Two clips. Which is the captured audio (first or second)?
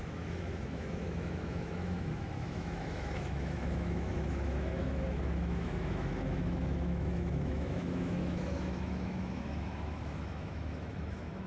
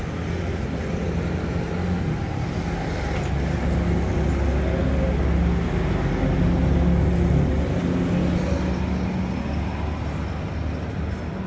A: second